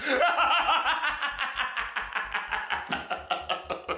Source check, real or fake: real